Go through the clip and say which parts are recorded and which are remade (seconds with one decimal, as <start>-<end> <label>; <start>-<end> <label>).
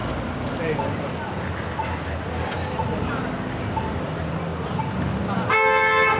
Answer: 0.0-6.2 recorded